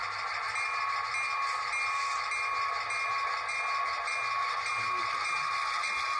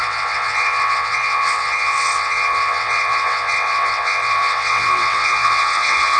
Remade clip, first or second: second